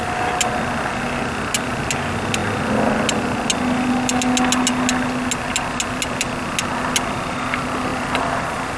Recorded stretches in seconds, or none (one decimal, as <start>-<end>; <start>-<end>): 0.0-8.8

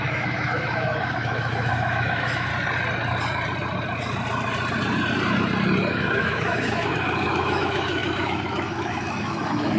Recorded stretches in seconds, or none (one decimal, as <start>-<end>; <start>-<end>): 2.5-5.9

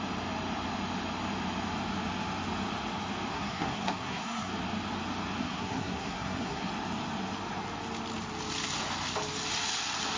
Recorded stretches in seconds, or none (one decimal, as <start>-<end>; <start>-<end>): 0.0-3.3; 4.5-5.4; 6.7-10.2

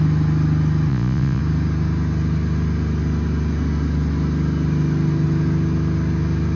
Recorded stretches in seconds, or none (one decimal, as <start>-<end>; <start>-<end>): 0.0-0.9; 1.4-6.6

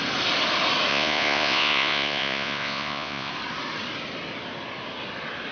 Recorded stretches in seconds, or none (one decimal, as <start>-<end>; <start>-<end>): 0.0-0.9; 3.3-5.5

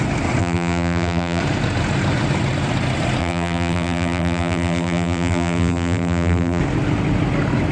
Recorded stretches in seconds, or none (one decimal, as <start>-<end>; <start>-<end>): 0.0-0.4; 1.4-3.2; 6.6-7.7